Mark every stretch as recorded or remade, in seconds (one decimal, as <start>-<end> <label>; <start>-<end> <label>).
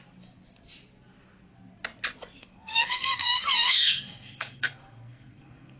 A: 0.0-2.4 recorded; 2.4-5.8 remade